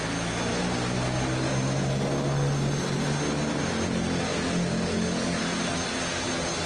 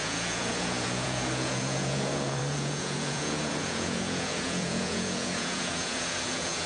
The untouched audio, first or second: first